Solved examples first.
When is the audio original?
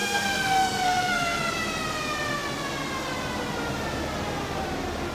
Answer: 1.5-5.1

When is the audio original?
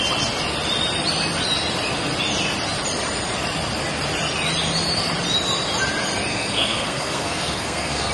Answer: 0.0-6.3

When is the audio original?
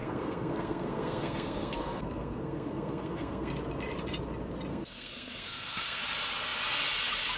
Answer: 3.5-4.7; 6.0-7.4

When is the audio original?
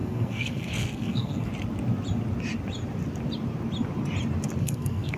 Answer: 1.5-4.6